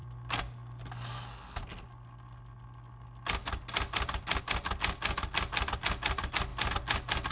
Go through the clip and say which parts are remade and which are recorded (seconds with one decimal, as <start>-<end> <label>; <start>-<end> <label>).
0.0-7.3 recorded